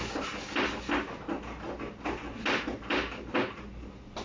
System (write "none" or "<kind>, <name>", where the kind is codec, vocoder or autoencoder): none